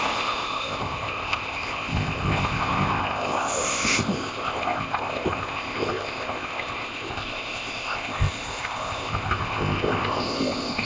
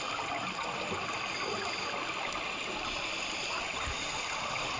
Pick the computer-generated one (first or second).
first